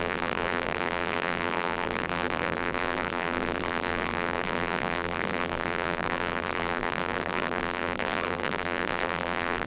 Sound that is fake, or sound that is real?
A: fake